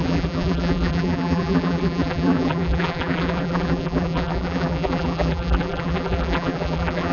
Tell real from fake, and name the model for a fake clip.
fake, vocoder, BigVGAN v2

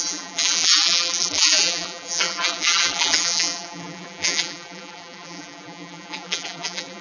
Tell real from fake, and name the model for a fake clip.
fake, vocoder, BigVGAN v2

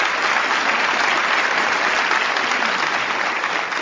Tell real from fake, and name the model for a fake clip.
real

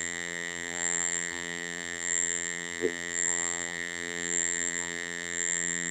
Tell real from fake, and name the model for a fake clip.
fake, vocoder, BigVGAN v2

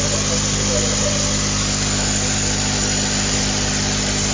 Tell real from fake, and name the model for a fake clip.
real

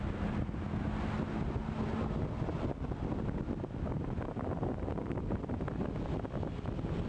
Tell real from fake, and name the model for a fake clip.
real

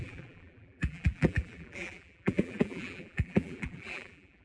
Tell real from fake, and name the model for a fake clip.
fake, vocoder, BigVGAN v2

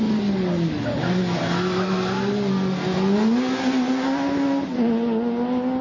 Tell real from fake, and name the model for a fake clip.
real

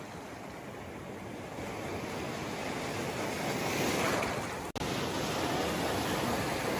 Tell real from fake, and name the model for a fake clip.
real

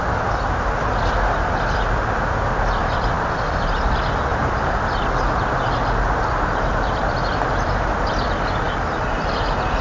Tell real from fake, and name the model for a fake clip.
real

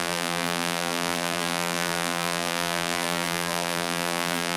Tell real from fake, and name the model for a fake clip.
fake, vocoder, BigVGAN v2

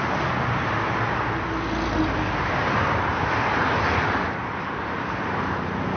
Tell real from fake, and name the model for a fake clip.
real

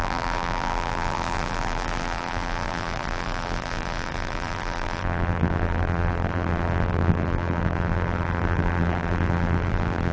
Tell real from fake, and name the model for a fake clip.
fake, vocoder, BigVGAN v2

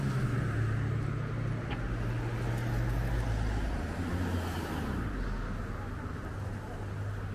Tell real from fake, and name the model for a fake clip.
real